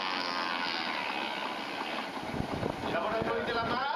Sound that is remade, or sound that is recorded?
recorded